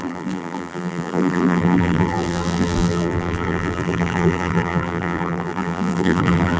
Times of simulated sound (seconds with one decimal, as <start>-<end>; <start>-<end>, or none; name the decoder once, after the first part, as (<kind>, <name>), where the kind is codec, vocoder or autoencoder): 0.0-6.6 (vocoder, BigVGAN v2)